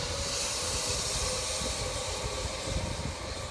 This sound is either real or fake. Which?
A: real